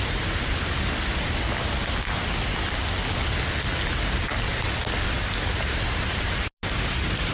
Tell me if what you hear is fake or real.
real